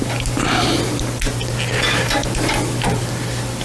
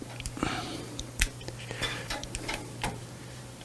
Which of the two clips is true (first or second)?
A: first